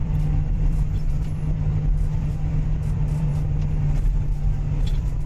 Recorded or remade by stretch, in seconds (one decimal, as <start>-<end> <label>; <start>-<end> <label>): 0.0-3.3 remade; 3.3-4.8 recorded; 4.8-5.3 remade